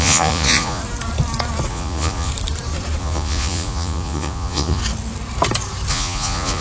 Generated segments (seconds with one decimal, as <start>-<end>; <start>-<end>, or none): 0.0-0.8; 1.7-2.3; 3.0-4.8; 5.9-6.6

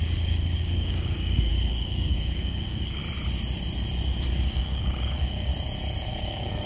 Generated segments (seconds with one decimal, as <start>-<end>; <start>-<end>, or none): 0.0-3.0; 4.4-5.5; 6.1-6.7

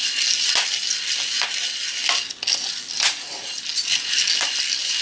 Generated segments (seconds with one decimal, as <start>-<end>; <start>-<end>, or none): none

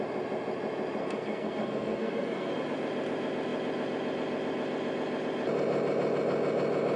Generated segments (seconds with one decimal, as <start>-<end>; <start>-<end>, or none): 1.0-2.5